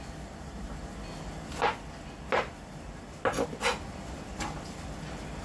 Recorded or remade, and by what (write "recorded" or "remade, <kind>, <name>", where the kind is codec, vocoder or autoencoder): recorded